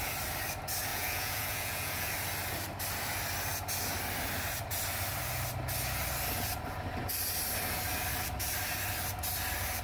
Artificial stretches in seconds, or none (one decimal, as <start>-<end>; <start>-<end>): 0.9-2.1